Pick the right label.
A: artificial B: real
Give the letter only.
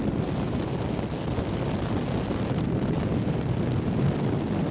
B